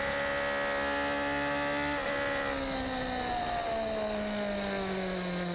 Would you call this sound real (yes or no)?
yes